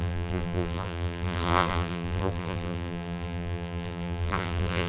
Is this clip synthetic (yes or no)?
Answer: yes